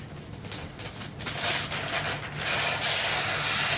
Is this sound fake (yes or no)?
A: no